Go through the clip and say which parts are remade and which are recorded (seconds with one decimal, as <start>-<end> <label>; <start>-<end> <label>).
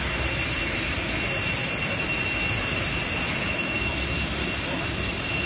0.0-5.5 recorded